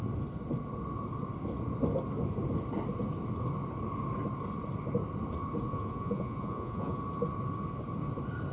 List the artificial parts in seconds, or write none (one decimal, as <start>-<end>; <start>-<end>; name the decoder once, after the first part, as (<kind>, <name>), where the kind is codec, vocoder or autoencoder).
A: 5.7-7.0 (vocoder, Vocos)